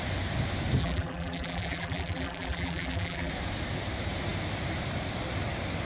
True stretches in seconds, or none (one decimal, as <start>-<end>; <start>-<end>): 0.0-0.8; 3.3-5.9